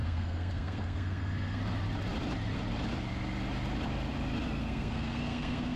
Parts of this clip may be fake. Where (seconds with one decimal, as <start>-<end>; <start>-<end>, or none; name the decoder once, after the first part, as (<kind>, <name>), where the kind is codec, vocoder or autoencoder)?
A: 0.0-1.6 (codec, SNAC); 4.6-5.8